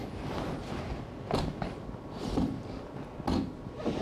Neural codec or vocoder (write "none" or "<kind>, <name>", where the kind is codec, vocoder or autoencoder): none